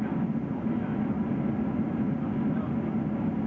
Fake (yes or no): no